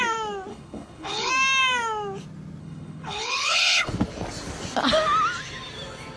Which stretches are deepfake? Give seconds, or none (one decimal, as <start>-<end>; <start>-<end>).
0.5-1.3; 2.6-3.9